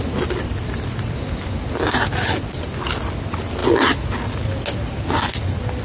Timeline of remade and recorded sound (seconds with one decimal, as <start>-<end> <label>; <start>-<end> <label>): 0.0-5.8 recorded